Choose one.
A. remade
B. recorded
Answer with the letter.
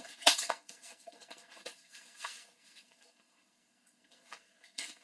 A